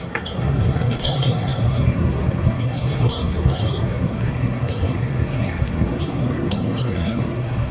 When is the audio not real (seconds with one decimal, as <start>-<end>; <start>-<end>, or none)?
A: 0.0-7.7